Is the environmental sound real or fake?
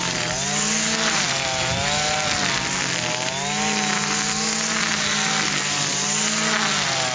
real